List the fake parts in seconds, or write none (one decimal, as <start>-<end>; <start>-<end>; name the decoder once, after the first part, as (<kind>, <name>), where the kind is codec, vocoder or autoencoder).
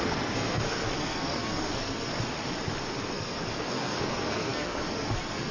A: 0.0-2.1 (codec, SNAC); 3.1-5.5